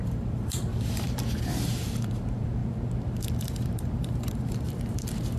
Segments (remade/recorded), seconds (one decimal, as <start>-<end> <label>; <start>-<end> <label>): 0.0-5.4 remade